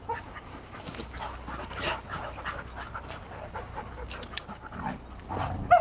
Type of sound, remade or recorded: recorded